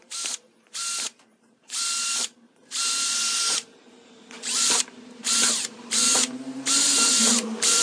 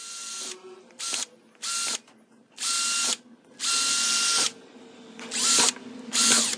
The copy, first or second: first